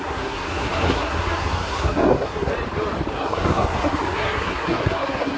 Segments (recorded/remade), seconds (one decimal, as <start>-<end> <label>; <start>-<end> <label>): 0.0-2.5 remade; 2.5-3.1 recorded; 3.1-5.4 remade